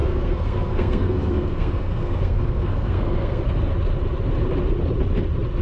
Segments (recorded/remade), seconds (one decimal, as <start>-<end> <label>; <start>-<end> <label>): 0.0-3.4 remade; 3.4-5.6 recorded